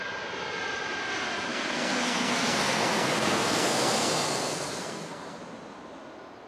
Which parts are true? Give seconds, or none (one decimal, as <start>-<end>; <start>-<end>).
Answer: 0.0-1.5; 5.4-6.5